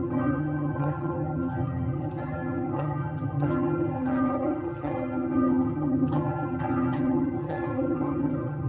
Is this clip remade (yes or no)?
yes